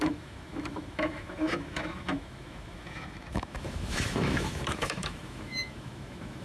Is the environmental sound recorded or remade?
remade